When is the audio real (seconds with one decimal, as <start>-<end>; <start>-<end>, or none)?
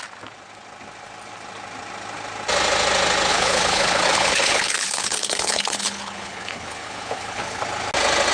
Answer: 0.0-3.3; 7.6-8.3